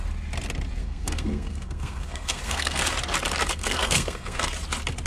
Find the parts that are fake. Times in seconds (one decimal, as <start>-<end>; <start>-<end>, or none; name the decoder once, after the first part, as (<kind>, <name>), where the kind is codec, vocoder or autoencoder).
0.8-2.8 (codec, SNAC); 3.6-4.5